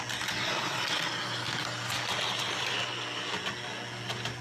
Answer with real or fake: real